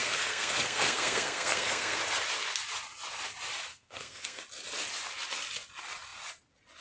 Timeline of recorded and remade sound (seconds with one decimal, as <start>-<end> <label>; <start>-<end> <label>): 0.0-2.0 remade; 2.0-3.7 recorded; 3.7-4.4 remade; 4.4-6.8 recorded